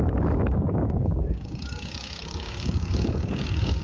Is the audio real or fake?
fake